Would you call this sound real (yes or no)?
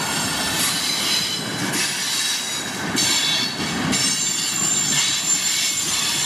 yes